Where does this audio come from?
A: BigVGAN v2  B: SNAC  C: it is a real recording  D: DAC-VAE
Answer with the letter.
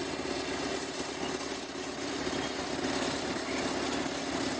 C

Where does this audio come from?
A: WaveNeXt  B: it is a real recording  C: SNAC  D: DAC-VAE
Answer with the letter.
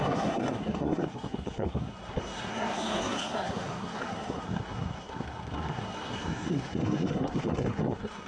C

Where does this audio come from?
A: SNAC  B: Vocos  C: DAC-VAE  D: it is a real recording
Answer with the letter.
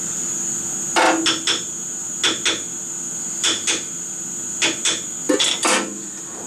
D